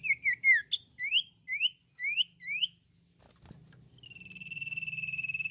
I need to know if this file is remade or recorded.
recorded